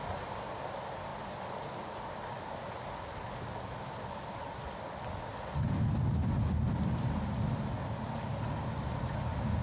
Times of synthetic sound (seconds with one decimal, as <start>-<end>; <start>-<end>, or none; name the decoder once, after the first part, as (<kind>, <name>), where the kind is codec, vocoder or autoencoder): none